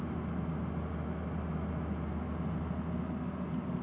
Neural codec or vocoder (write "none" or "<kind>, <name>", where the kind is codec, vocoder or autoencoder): none